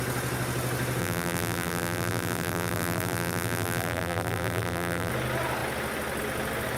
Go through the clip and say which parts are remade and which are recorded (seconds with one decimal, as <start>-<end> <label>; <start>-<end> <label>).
0.0-1.0 recorded; 1.0-5.1 remade; 5.1-6.8 recorded